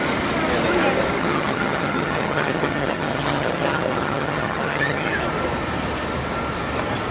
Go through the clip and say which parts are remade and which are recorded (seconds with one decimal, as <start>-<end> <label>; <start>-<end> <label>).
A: 0.0-1.2 recorded; 1.2-5.1 remade; 5.1-7.1 recorded